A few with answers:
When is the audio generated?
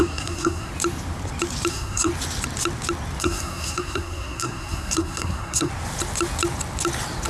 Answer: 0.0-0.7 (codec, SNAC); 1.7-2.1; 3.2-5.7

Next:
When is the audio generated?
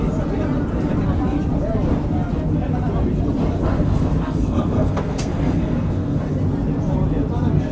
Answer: 3.7-6.2 (codec, SNAC)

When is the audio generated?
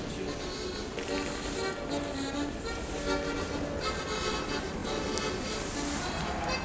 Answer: none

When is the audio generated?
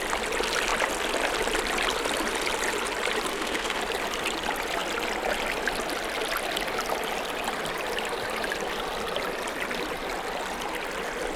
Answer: 3.3-3.8 (codec, SNAC)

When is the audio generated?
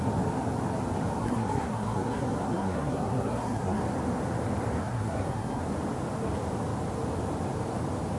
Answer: 1.2-3.8 (codec, SNAC); 4.8-5.6